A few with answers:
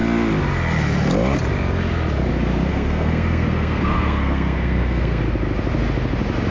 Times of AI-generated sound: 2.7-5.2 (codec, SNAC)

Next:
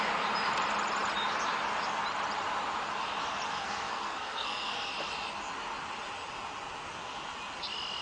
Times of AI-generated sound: 3.5-4.9 (codec, SNAC)

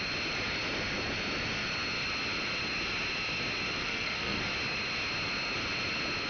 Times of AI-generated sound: 3.8-4.4 (codec, SNAC)

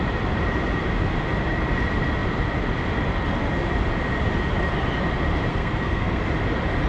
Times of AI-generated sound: 5.5-6.2 (codec, SNAC)

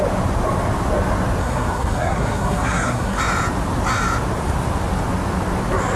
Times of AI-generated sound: 1.4-3.2 (codec, SNAC)

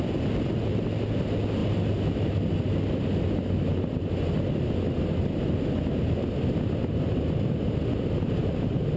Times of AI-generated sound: none

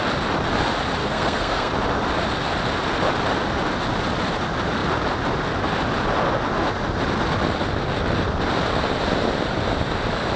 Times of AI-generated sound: 1.0-1.7 (codec, SNAC)